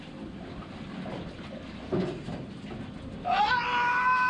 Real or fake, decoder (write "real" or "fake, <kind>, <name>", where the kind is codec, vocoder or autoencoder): real